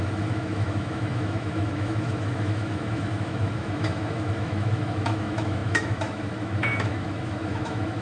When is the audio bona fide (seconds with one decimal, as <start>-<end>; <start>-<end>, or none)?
none